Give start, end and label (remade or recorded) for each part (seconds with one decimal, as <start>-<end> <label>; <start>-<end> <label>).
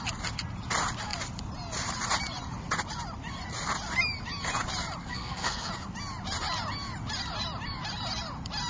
0.0-5.0 recorded; 5.0-5.7 remade; 5.7-8.7 recorded